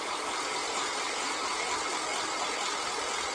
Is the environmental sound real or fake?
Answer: real